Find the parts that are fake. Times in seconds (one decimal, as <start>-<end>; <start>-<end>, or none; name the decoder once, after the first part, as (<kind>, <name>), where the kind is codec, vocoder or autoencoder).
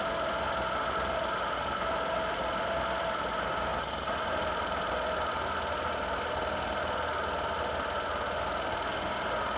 none